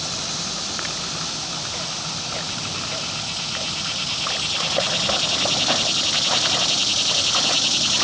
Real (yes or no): yes